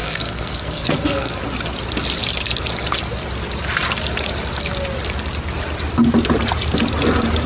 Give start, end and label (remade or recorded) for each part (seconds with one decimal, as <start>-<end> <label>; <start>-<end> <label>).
0.0-1.4 remade; 1.4-7.5 recorded